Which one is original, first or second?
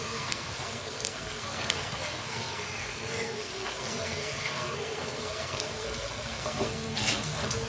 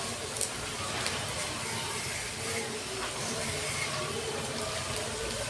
second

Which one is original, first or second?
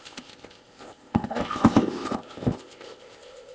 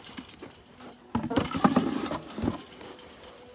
second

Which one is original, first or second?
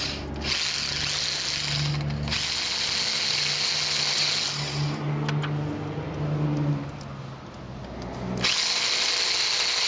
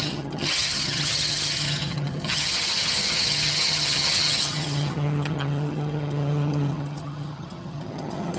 first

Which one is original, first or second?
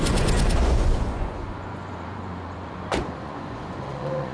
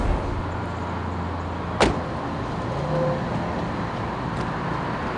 second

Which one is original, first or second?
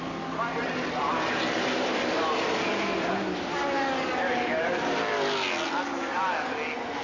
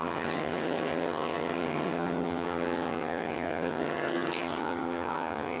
first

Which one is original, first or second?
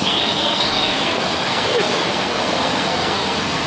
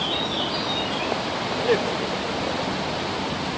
second